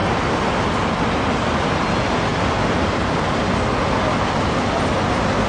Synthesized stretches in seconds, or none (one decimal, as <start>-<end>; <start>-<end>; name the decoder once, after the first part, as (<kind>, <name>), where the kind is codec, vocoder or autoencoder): none